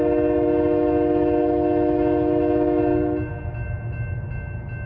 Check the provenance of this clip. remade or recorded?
recorded